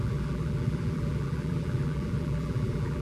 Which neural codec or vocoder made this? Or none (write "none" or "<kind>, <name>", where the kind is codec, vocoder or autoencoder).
vocoder, BigVGAN v2